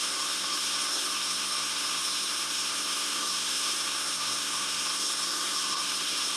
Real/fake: fake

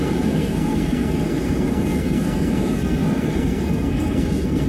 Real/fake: fake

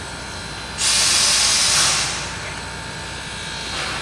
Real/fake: real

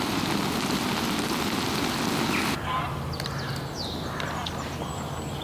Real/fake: real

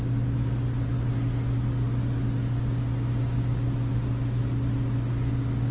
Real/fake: real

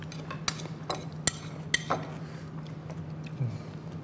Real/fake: real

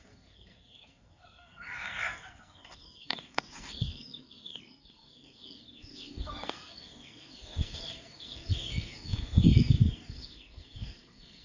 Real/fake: fake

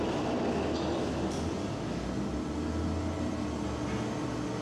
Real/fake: real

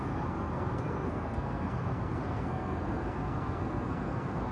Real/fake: fake